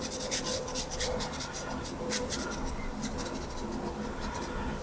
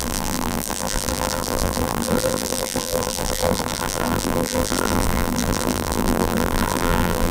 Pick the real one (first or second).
first